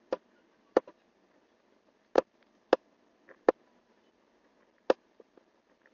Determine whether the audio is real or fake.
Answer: real